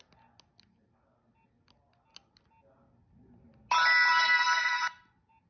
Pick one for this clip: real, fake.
real